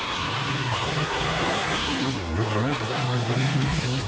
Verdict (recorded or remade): remade